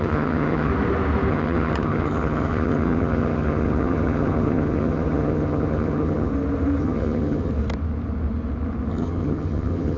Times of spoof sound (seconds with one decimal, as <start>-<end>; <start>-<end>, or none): 0.0-0.7; 1.3-6.3; 6.8-7.5; 8.9-10.0